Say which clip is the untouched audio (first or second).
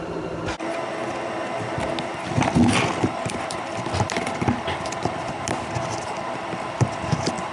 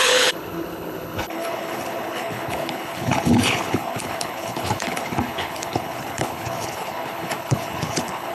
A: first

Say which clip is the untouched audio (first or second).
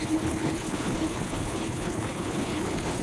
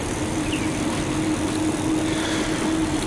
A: second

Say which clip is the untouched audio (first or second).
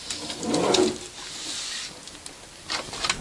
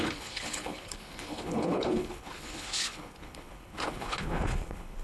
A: first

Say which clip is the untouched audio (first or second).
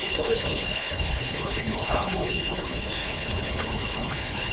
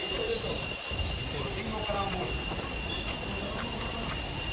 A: second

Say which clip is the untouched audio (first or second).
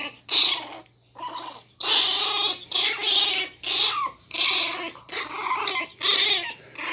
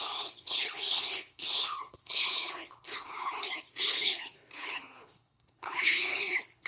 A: first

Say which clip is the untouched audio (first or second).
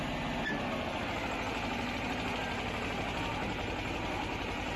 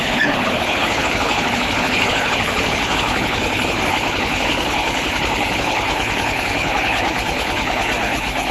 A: first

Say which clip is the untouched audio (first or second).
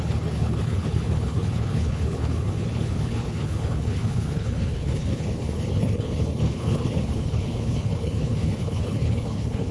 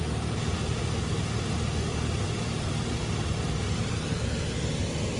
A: second